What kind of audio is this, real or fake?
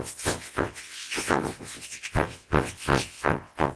fake